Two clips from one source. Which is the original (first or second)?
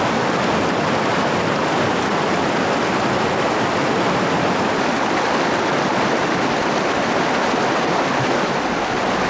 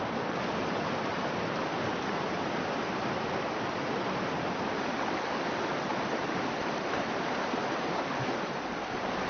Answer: first